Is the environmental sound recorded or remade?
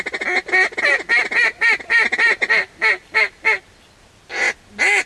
recorded